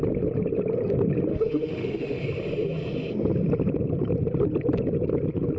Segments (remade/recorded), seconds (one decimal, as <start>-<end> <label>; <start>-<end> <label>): 0.0-1.3 recorded; 1.3-2.2 remade; 2.2-5.6 recorded